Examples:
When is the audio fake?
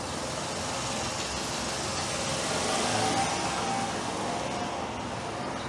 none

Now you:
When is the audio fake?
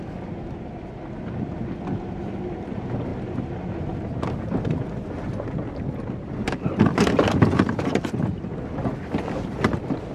0.0-10.1 (vocoder, BigVGAN v2)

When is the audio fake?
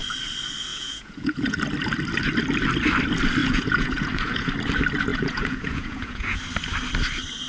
0.7-1.6 (vocoder, Vocos); 3.4-4.5; 5.1-6.4